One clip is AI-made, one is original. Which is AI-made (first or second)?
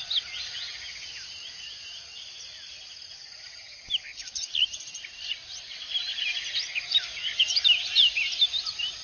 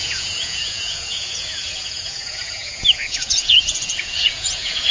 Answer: second